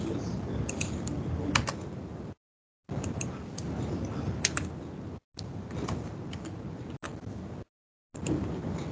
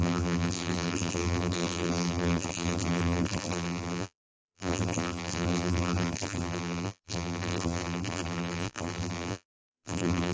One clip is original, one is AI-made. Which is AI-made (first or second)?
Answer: second